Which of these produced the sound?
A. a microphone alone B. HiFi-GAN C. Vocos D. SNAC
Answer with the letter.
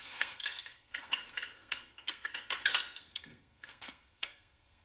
D